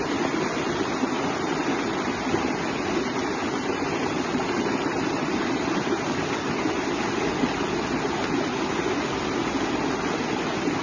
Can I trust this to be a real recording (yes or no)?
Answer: yes